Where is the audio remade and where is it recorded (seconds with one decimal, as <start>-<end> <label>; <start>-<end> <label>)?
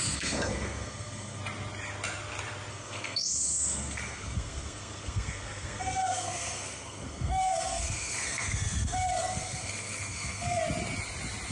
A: 0.0-1.4 remade; 1.4-2.7 recorded; 2.7-10.6 remade; 10.6-11.5 recorded